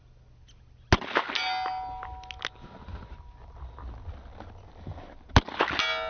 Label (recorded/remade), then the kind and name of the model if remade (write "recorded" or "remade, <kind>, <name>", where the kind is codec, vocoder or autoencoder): recorded